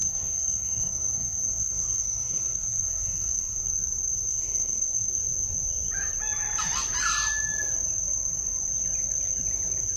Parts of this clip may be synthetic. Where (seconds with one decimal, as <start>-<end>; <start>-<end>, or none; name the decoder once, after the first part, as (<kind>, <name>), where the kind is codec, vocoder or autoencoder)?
0.0-3.6 (codec, SNAC); 4.3-5.1